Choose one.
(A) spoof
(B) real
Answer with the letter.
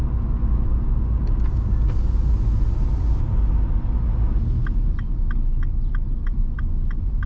B